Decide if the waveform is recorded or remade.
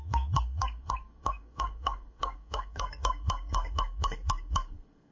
remade